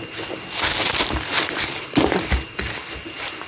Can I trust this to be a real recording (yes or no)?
yes